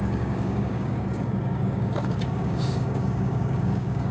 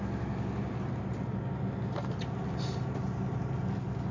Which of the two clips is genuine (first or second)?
second